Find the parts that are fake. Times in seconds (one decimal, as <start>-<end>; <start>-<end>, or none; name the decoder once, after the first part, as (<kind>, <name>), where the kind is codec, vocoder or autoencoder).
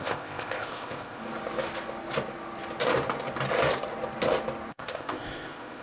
0.0-1.2 (codec, ZipCodec); 4.7-5.8